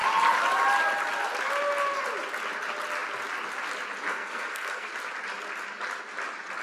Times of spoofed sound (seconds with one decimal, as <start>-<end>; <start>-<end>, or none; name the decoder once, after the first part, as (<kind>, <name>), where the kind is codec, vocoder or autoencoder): 4.1-4.9 (codec, SNAC)